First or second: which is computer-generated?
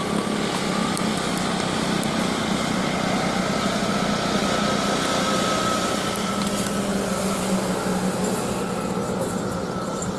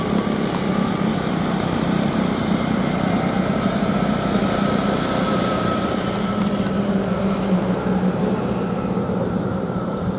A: second